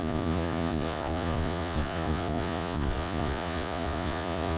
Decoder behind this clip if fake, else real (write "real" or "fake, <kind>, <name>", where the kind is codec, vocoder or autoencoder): fake, vocoder, Vocos